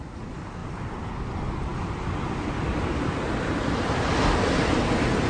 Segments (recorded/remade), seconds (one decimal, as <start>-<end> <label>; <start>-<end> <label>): 0.0-5.3 recorded